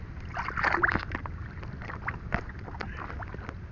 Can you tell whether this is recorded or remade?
recorded